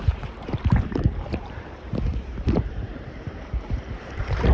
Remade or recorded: remade